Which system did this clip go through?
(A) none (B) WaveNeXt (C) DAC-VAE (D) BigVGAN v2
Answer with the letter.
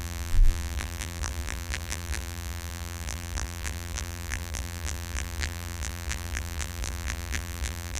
D